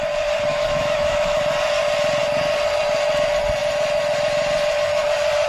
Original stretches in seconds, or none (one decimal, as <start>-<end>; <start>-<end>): 0.0-0.5; 1.4-5.5